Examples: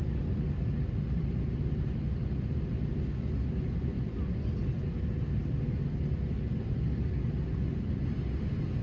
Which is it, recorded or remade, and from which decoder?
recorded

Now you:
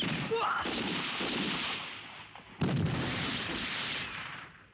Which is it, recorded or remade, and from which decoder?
remade, vocoder, BigVGAN v2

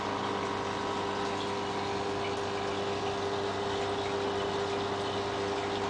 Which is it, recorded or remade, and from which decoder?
recorded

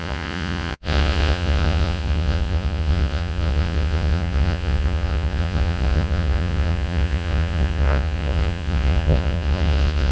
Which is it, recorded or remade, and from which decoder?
remade, vocoder, Vocos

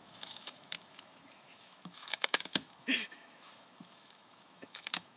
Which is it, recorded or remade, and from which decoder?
remade, autoencoder, DAC-VAE